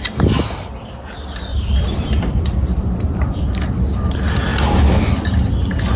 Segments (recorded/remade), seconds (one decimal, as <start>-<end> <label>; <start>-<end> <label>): 0.0-1.5 recorded; 1.5-3.6 remade; 3.6-4.5 recorded; 4.5-5.3 remade; 5.3-6.0 recorded